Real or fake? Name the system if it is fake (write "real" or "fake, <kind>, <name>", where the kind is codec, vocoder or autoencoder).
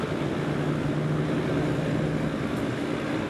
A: real